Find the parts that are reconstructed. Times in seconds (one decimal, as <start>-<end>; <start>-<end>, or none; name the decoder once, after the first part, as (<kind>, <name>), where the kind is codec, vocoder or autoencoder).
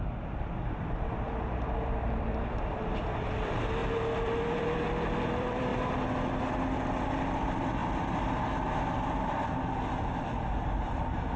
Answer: 0.0-5.7 (vocoder, BigVGAN v2); 6.4-7.8; 11.0-11.4